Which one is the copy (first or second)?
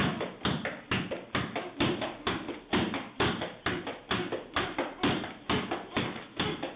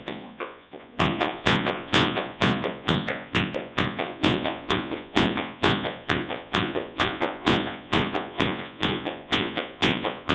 second